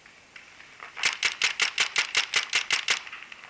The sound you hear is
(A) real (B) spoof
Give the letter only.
A